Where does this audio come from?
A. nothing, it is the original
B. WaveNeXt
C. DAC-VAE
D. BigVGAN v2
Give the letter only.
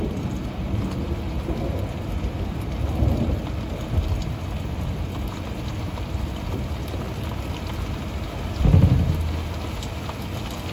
A